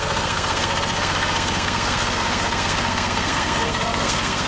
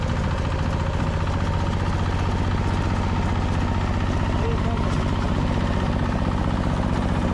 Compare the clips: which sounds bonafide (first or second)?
second